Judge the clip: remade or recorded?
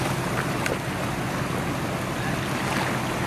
recorded